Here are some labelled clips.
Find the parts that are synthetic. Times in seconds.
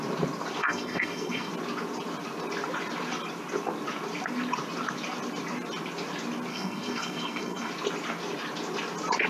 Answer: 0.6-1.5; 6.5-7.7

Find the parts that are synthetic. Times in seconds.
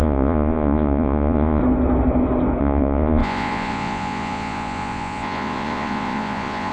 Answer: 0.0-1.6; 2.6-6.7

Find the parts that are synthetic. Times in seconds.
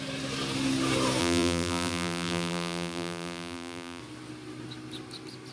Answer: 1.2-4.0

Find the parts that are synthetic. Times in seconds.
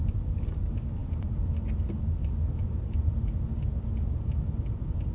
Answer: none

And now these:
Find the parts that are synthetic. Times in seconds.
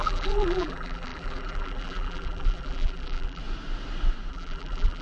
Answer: 0.0-3.4; 4.3-5.0